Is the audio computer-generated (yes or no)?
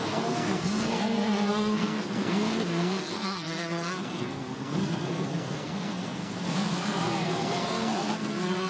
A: yes